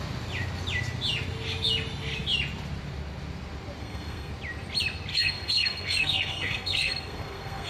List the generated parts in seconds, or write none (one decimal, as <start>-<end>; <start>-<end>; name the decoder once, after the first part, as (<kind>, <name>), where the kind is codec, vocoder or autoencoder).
3.8-4.3 (codec, SNAC); 5.1-7.7

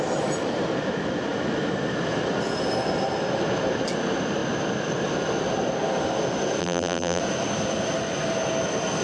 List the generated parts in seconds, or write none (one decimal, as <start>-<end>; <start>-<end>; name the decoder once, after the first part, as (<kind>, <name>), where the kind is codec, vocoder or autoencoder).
6.6-7.2 (vocoder, BigVGAN v2)